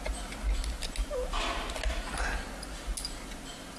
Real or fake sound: real